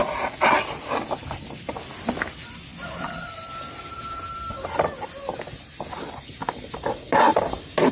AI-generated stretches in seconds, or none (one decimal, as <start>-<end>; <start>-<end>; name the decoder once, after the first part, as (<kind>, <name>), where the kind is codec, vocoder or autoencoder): 1.2-1.8 (vocoder, BigVGAN v2); 2.7-3.8